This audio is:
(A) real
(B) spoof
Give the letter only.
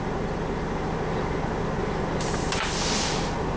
A